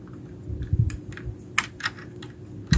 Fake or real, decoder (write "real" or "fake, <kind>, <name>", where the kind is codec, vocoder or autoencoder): real